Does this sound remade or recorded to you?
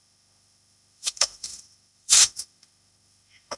remade